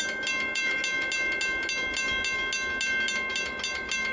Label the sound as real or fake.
real